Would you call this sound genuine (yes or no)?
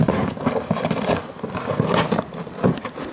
yes